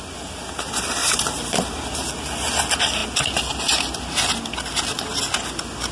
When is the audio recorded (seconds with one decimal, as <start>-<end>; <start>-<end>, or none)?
0.0-1.0; 2.1-5.9